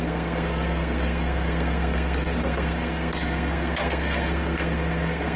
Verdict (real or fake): fake